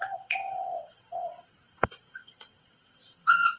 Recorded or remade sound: remade